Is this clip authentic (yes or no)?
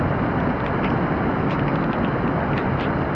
yes